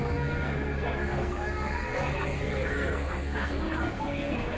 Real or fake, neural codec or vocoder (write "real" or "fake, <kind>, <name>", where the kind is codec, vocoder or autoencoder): fake, codec, SNAC